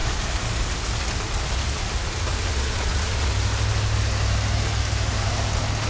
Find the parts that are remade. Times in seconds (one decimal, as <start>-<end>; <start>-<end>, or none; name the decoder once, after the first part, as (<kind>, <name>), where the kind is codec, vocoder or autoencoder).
2.5-3.3 (vocoder, Vocos)